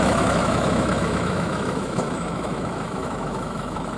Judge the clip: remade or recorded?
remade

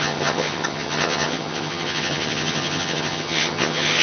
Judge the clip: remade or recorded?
remade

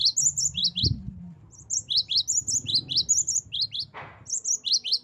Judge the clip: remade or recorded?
recorded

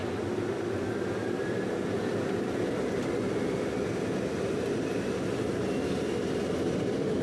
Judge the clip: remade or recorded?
recorded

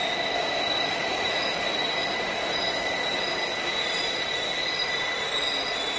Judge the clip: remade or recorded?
recorded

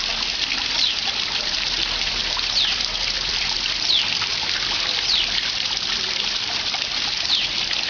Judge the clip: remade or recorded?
remade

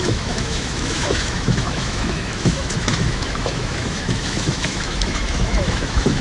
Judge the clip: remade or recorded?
remade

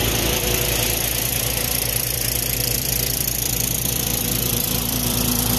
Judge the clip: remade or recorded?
remade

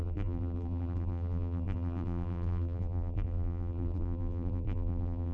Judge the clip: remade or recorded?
remade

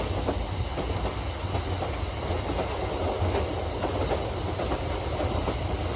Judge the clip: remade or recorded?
recorded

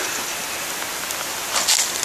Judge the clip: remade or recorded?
recorded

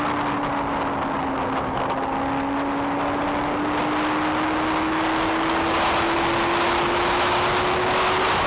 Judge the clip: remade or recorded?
recorded